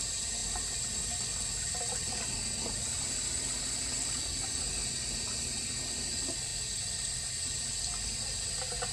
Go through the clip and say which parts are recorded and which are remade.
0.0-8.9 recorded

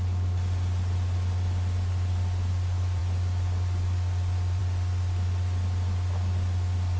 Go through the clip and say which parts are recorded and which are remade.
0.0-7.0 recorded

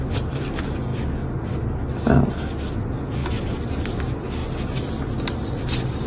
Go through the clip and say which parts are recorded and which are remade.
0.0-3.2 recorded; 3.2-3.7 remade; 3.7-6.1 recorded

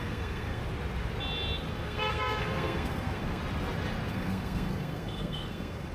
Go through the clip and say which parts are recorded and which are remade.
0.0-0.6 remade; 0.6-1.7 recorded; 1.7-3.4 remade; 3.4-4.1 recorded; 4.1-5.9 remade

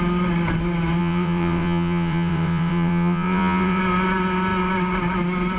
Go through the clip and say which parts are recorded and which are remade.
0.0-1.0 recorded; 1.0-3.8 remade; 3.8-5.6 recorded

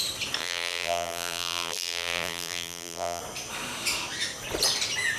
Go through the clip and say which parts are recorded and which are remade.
0.0-0.4 recorded; 0.4-3.2 remade; 3.2-5.2 recorded

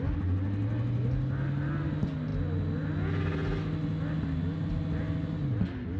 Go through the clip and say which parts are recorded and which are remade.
0.0-6.0 recorded